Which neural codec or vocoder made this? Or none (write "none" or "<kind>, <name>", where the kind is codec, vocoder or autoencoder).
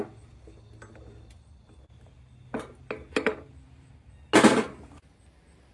none